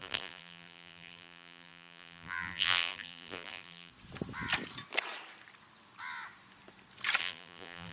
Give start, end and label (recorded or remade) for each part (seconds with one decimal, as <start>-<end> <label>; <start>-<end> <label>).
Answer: 0.0-3.9 remade; 3.9-7.2 recorded; 7.2-7.9 remade